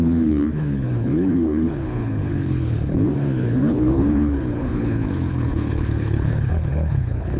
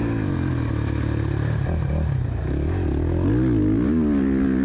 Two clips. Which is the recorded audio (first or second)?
second